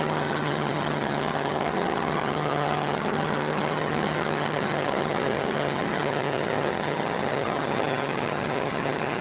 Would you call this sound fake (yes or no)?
yes